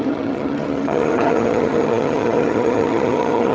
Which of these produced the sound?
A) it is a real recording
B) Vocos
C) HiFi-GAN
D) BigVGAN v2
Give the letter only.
C